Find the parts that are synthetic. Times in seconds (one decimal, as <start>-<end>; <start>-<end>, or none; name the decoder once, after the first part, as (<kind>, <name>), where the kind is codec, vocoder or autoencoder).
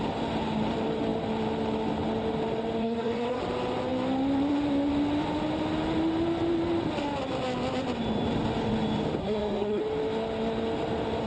2.8-3.4 (codec, SNAC); 9.2-9.8